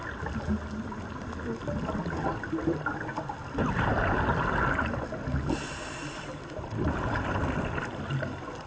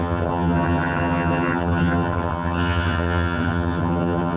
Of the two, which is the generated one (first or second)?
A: second